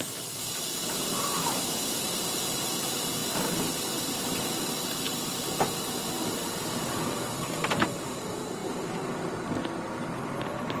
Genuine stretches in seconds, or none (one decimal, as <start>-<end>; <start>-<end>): 0.0-1.3; 2.8-3.2; 7.0-10.8